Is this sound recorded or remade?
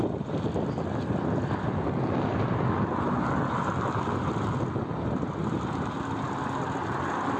recorded